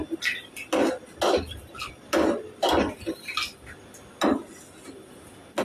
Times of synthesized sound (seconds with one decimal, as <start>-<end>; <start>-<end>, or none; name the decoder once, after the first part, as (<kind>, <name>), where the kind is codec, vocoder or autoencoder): none